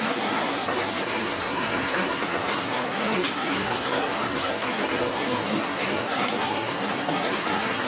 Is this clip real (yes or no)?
no